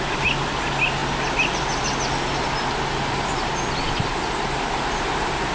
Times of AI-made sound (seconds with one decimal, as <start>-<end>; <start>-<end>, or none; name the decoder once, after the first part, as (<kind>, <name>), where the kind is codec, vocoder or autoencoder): none